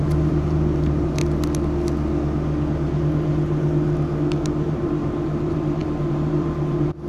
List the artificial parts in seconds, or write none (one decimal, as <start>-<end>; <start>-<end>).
0.0-1.2; 4.2-7.1